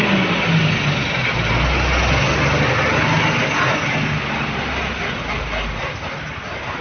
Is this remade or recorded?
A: recorded